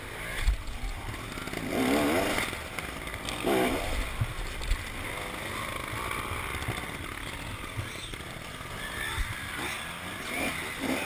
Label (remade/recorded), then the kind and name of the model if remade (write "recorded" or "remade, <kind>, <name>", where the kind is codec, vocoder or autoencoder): recorded